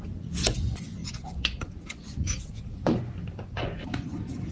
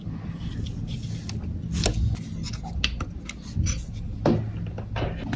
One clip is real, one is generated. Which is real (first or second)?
second